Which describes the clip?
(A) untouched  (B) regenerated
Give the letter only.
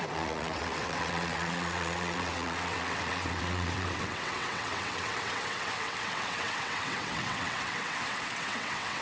B